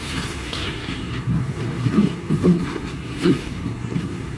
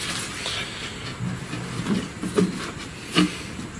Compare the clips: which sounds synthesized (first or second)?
first